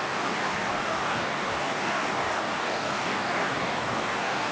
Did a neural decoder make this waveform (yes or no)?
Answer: yes